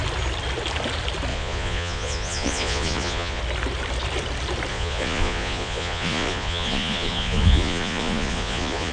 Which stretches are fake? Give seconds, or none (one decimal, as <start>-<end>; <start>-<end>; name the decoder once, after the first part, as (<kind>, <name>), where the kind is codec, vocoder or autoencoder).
1.3-3.4 (vocoder, Vocos); 4.7-8.9